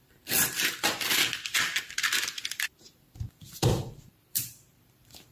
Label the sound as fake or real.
fake